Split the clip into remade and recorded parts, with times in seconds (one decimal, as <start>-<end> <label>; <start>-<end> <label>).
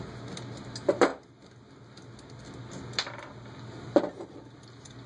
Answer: 0.0-5.1 recorded